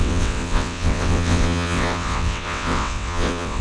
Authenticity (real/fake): fake